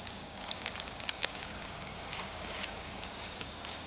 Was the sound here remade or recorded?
remade